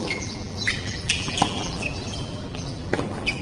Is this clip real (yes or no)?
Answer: no